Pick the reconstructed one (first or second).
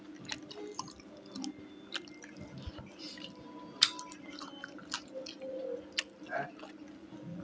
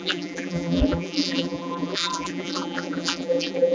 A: second